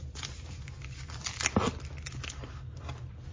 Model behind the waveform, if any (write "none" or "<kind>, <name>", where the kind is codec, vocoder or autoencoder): none